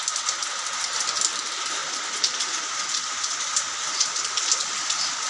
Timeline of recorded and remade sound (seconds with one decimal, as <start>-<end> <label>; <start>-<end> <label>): 0.0-5.3 recorded